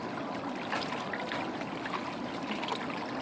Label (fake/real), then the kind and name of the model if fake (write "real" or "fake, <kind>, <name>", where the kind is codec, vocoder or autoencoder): real